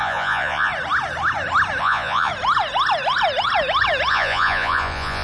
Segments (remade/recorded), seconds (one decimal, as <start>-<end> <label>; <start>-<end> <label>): 0.0-0.7 remade; 0.7-1.8 recorded; 1.8-2.3 remade; 2.3-4.1 recorded; 4.1-5.2 remade